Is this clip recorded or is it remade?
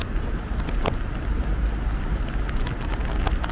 recorded